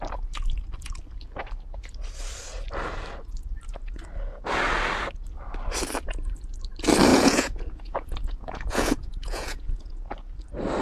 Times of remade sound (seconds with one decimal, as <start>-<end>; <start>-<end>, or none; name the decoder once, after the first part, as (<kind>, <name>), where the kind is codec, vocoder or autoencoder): 7.1-9.9 (vocoder, Vocos)